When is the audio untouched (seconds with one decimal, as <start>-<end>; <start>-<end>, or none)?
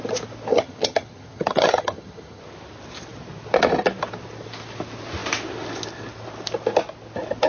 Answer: 0.0-0.5; 2.4-7.5